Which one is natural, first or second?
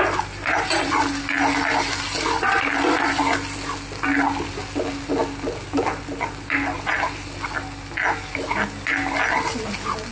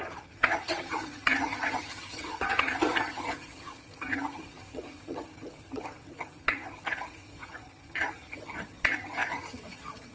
first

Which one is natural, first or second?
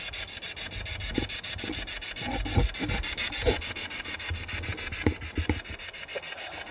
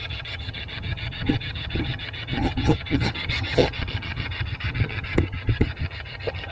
first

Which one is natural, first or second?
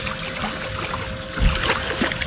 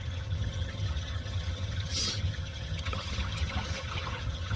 first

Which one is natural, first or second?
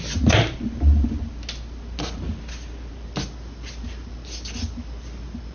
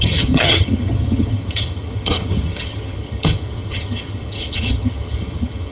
first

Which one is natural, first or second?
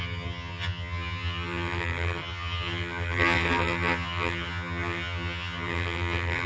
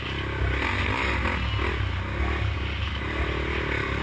second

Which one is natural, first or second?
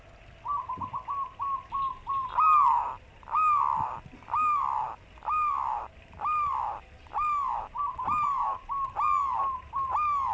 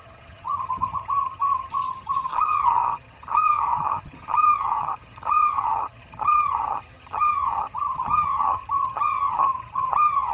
first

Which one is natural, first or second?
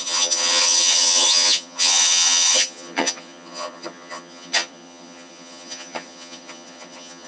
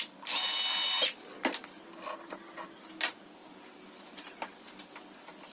second